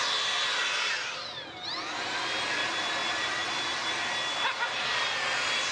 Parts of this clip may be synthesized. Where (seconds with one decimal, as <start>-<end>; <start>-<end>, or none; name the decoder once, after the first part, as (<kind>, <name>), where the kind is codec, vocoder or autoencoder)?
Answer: none